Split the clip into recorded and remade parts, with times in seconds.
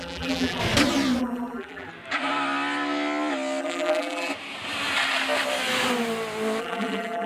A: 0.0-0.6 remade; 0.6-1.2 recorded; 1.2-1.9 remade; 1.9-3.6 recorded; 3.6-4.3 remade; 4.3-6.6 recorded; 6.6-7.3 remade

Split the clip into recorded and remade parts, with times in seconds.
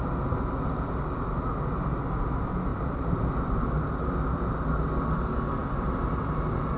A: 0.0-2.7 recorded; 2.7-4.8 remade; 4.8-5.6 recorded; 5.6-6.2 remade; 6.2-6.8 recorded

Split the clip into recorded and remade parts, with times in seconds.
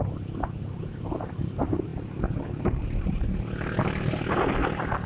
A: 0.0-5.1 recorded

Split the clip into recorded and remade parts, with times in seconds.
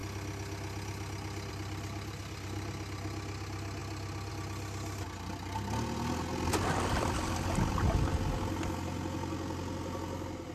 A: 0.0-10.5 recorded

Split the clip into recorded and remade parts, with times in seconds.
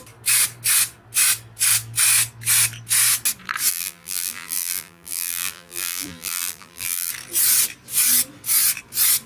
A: 0.0-3.7 recorded; 3.7-7.1 remade; 7.1-9.3 recorded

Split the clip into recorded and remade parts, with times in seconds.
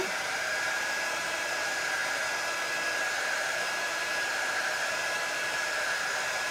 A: 0.0-2.0 remade; 2.0-3.2 recorded; 3.2-6.5 remade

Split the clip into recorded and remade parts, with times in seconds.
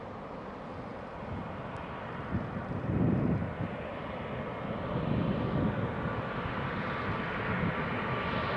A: 0.0-0.9 recorded; 0.9-2.8 remade; 2.8-8.6 recorded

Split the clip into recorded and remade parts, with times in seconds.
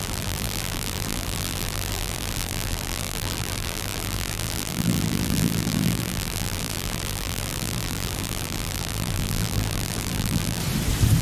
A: 0.0-10.6 remade; 10.6-11.2 recorded